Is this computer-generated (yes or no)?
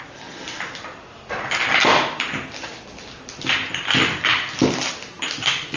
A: no